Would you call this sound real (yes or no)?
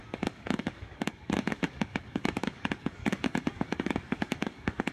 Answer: no